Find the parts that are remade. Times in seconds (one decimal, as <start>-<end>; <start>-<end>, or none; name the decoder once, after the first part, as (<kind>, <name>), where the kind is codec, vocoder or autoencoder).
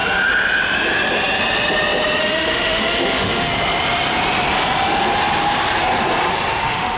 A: 2.2-3.5 (autoencoder, DAC-VAE); 6.6-7.0